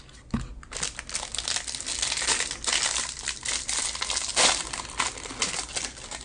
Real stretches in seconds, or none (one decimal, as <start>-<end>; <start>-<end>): 0.0-6.2